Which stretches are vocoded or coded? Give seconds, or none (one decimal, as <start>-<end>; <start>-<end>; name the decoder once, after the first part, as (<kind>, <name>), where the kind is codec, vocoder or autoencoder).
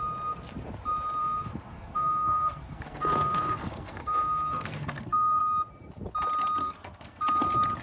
1.2-5.4 (codec, SNAC); 6.6-7.2